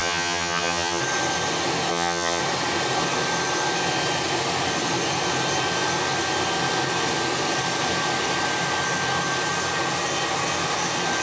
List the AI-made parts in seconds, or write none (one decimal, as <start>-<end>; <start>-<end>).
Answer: 0.0-1.0; 1.9-2.4